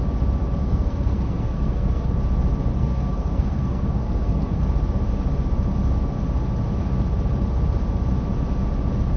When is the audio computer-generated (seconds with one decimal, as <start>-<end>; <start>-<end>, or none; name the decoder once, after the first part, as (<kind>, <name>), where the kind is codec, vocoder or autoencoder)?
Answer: 0.6-2.1 (codec, SNAC); 2.7-4.6